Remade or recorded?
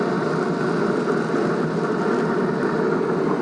recorded